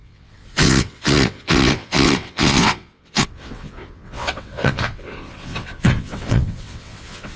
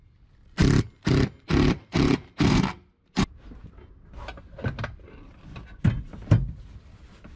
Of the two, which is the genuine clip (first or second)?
second